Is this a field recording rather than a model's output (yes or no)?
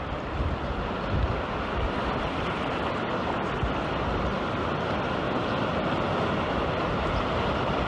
yes